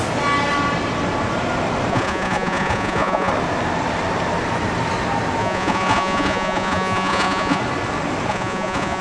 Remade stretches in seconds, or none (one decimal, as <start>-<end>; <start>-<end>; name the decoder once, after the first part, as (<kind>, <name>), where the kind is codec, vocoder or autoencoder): 1.9-3.3 (vocoder, Vocos); 5.4-7.6; 8.3-9.0